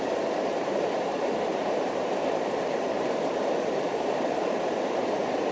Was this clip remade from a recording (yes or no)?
yes